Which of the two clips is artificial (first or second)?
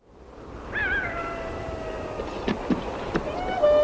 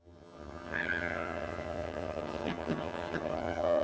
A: second